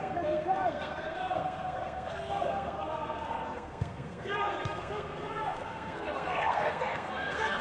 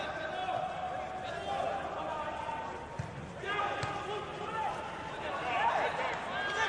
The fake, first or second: first